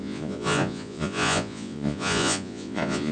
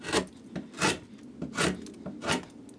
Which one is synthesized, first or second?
first